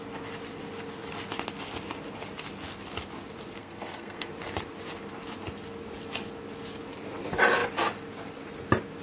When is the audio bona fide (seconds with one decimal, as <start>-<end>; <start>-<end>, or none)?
0.0-3.6; 4.3-9.0

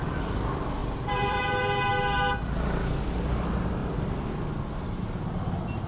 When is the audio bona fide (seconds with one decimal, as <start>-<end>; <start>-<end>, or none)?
0.0-0.8; 1.4-3.8; 4.4-5.9

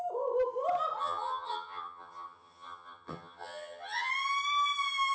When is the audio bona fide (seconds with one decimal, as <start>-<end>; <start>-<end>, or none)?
0.0-1.0; 4.1-5.1

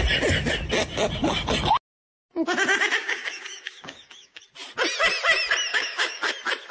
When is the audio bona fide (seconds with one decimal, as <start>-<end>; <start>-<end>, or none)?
0.0-3.0; 4.4-5.7; 6.3-6.7

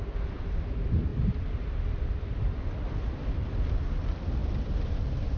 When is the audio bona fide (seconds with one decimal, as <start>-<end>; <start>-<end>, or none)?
0.0-4.4

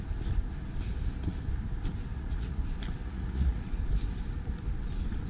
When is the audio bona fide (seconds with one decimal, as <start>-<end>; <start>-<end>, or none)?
0.0-2.1; 2.6-3.0; 3.8-5.3

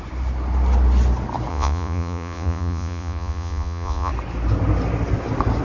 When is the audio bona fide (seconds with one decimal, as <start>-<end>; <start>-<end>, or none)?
0.0-1.5; 4.1-5.6

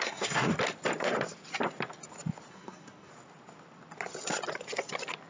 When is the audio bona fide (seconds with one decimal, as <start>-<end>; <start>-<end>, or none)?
0.5-2.5; 3.1-5.3